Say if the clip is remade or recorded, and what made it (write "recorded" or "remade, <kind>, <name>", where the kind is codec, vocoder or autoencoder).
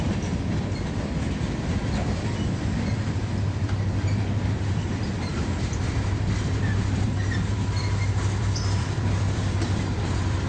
remade, vocoder, BigVGAN v2